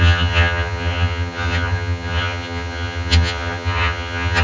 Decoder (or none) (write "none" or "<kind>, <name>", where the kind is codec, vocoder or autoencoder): vocoder, HiFi-GAN